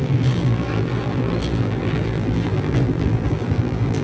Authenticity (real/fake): fake